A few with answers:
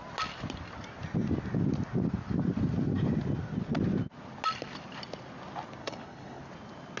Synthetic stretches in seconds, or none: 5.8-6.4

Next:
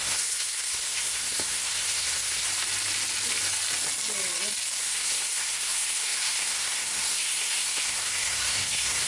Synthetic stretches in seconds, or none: 0.0-2.5; 4.8-9.1

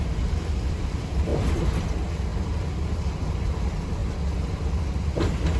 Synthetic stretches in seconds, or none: 0.0-5.6

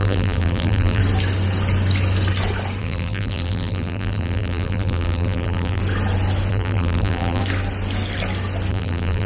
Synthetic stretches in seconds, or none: 0.0-1.0; 2.8-5.8; 6.5-7.4; 8.7-9.3

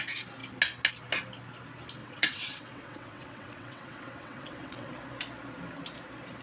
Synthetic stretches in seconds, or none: 2.0-4.9

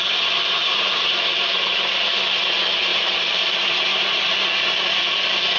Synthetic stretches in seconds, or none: 0.6-1.9; 2.9-4.3

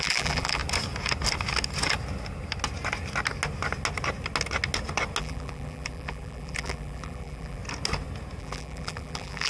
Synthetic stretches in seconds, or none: 0.0-0.6; 5.2-7.6; 8.4-9.5